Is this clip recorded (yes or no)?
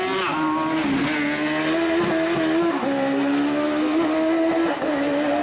yes